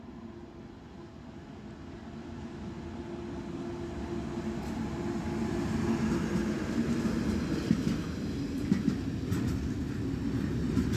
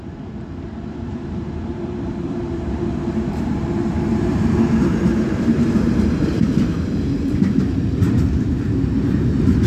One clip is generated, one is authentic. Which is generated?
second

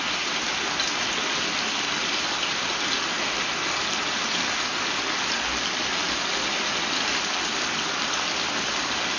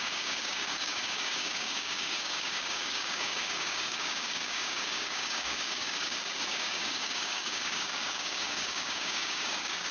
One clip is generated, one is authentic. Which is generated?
second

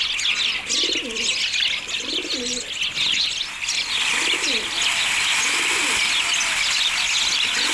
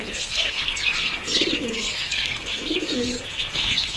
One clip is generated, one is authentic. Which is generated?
second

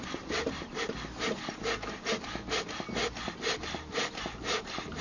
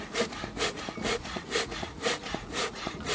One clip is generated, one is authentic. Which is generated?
second